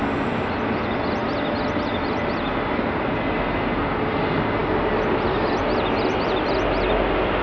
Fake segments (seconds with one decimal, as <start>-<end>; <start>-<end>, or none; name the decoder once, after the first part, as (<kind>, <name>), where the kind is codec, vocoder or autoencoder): none